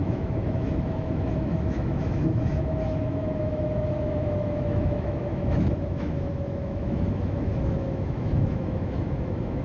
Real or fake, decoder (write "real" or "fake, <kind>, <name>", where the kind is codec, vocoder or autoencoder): fake, autoencoder, DAC-VAE